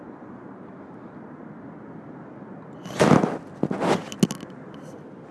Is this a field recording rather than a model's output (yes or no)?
yes